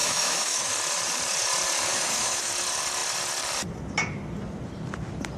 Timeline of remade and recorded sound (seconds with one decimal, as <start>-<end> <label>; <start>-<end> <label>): 0.0-0.7 remade; 0.7-1.9 recorded; 1.9-2.5 remade; 2.5-5.4 recorded